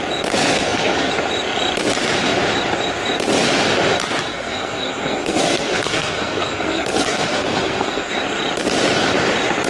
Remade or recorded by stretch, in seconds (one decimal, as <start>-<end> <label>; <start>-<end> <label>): 0.0-0.5 recorded; 0.5-1.1 remade; 1.1-4.3 recorded; 4.3-8.1 remade; 8.1-9.7 recorded